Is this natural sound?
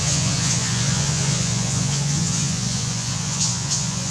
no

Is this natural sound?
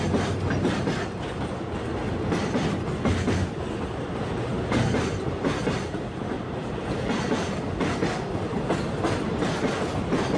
yes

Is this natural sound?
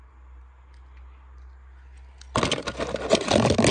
yes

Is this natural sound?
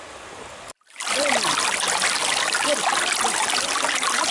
yes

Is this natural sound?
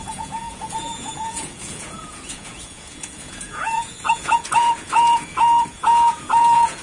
no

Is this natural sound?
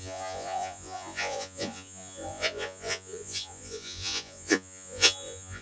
no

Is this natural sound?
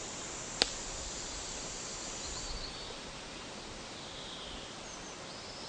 yes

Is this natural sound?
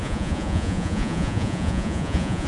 no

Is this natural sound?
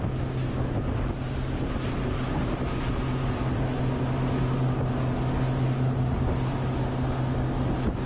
yes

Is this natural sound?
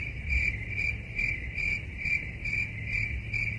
yes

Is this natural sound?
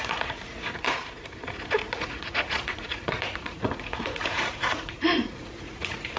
no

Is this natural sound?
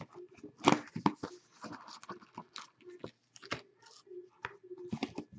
yes